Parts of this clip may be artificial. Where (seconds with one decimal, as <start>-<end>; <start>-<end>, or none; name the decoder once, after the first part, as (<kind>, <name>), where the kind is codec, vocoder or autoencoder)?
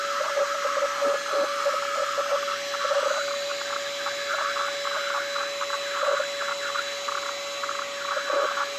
none